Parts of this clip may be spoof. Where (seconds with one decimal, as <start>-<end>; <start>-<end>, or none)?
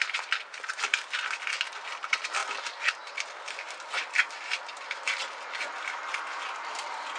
none